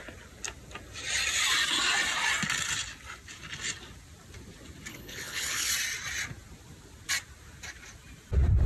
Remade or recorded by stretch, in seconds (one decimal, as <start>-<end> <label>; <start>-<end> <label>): 0.0-4.9 recorded; 4.9-5.7 remade; 5.7-8.7 recorded